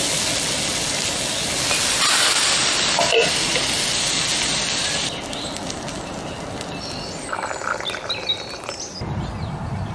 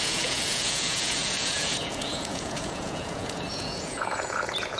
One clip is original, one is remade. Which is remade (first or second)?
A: second